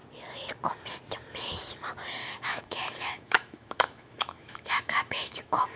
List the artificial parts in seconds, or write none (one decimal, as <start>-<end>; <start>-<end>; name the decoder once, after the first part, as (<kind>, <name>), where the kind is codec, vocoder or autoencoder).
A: 2.2-5.8 (autoencoder, DAC-VAE)

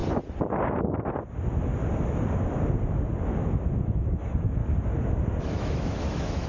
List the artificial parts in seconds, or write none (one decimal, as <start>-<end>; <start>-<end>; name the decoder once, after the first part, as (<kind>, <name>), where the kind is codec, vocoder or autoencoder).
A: 3.8-4.6 (autoencoder, DAC-VAE); 5.4-6.5

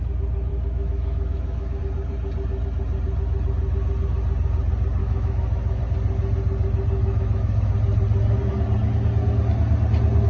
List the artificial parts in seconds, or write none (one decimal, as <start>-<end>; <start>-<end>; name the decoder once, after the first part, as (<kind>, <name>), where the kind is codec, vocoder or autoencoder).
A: 0.5-1.8 (autoencoder, DAC-VAE); 5.0-5.8; 7.0-7.7

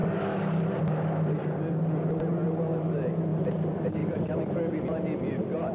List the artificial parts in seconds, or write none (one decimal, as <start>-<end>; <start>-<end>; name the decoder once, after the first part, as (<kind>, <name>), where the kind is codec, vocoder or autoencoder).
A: none

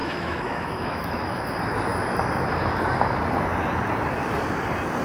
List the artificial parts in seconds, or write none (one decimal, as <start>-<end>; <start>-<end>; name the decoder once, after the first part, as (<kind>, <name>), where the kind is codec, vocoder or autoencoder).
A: 0.0-1.4 (autoencoder, DAC-VAE)

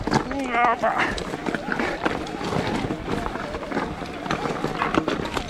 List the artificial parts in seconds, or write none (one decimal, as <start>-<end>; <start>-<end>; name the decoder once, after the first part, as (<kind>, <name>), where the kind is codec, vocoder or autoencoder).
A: none

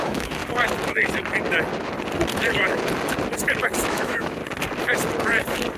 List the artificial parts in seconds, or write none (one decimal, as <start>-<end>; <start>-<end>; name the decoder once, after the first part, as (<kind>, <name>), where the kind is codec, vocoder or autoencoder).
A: 0.0-0.4 (autoencoder, DAC-VAE); 3.9-4.4